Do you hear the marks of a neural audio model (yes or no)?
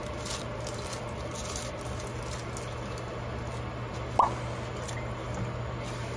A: no